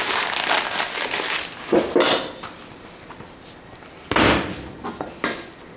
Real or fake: real